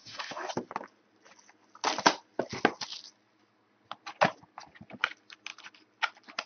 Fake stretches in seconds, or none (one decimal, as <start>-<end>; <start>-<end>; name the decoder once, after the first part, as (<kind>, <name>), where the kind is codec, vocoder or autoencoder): 0.0-0.5 (autoencoder, DAC-VAE)